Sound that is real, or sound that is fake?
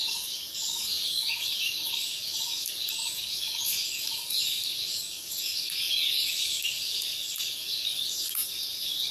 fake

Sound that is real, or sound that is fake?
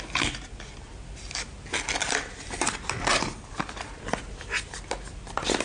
real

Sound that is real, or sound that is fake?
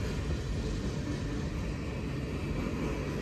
real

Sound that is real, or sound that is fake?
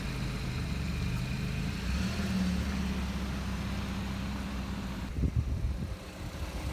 real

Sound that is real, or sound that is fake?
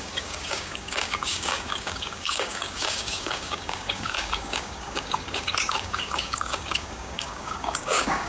fake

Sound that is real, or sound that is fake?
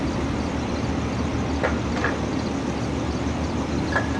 real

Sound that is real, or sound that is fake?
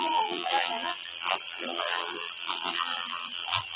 fake